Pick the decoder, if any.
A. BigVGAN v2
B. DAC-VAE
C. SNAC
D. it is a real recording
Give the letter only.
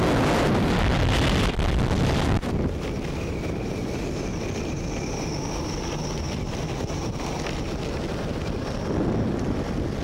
D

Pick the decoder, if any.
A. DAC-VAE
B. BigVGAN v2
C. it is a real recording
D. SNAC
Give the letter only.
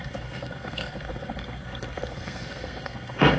D